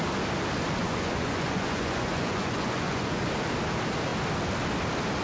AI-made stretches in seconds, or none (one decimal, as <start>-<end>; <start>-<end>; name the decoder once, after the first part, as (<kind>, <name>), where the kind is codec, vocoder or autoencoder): 0.8-3.2 (vocoder, Vocos)